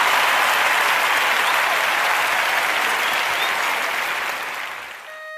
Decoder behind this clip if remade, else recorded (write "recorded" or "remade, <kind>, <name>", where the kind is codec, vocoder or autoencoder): recorded